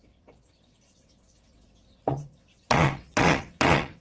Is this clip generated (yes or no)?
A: yes